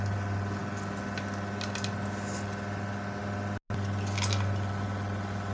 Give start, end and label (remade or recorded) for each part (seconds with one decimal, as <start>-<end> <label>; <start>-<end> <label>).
0.0-5.5 recorded